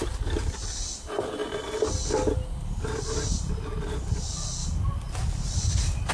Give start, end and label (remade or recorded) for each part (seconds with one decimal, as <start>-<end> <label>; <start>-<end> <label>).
0.0-6.1 recorded